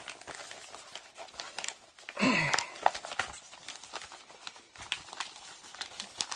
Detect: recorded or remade recorded